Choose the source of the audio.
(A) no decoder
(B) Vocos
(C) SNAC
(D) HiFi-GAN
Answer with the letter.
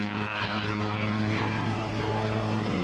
C